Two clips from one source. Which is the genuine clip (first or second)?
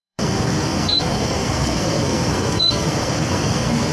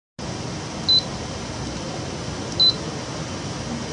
second